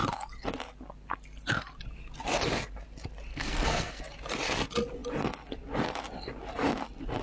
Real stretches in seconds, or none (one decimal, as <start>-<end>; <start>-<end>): 0.0-3.3; 4.0-7.2